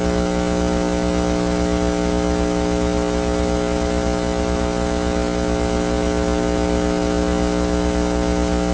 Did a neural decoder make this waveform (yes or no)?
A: no